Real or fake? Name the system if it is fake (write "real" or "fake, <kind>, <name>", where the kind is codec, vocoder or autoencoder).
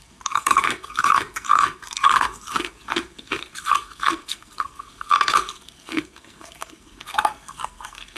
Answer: fake, codec, SNAC